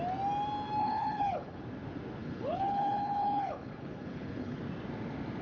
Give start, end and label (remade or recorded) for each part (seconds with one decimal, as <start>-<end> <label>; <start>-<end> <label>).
0.0-0.8 recorded; 0.8-1.6 remade; 1.6-2.2 recorded; 2.2-4.6 remade; 4.6-5.4 recorded